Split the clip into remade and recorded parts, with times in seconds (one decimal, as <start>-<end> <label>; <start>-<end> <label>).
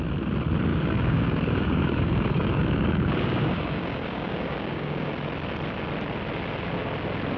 0.0-0.7 recorded; 0.7-5.1 remade; 5.1-7.4 recorded